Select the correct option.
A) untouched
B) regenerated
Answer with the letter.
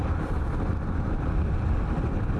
B